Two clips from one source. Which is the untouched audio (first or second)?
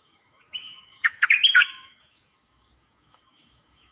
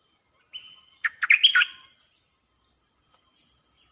second